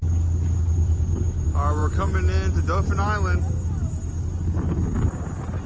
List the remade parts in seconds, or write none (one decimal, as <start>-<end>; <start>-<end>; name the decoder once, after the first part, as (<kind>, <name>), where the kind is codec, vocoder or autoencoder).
none